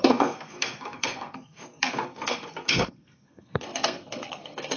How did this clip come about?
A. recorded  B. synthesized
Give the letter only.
B